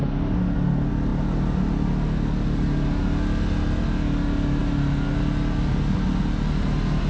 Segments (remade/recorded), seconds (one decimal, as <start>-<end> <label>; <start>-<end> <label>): 0.0-7.1 recorded